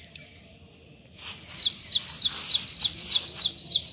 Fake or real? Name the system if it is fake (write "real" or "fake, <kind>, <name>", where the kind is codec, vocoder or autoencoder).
real